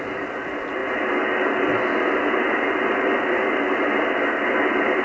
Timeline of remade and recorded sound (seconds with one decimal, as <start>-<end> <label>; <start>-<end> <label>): 0.0-5.0 recorded